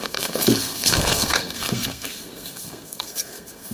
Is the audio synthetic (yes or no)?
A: yes